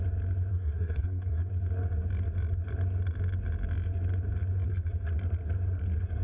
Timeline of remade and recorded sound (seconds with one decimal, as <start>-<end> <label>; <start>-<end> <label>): 0.0-0.5 recorded; 0.5-1.5 remade; 1.5-6.2 recorded